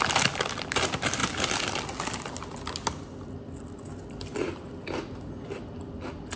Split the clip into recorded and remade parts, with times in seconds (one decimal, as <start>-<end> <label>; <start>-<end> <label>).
0.0-6.4 recorded